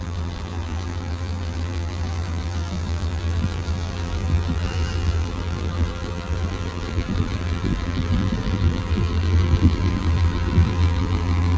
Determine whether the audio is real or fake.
fake